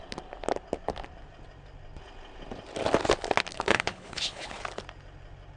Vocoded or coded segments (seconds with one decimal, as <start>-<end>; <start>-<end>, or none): 3.5-4.6